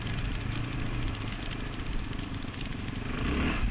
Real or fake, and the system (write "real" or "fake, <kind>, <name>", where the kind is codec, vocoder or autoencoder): fake, vocoder, BigVGAN v2